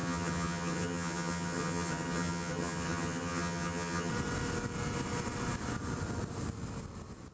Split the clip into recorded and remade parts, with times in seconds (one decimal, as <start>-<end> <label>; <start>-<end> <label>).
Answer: 0.0-4.1 remade; 4.1-7.3 recorded